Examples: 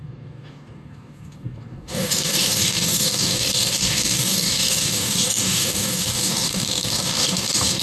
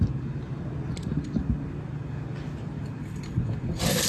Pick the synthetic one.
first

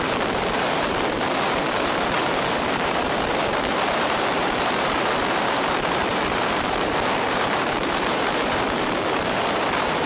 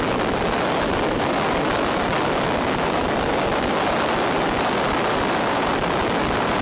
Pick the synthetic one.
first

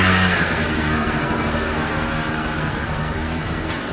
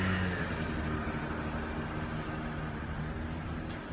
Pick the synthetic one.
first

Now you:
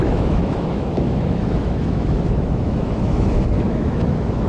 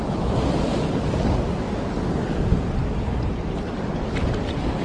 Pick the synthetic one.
first